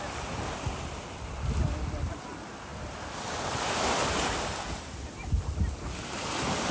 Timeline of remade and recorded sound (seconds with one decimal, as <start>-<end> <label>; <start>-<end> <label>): 0.0-6.7 recorded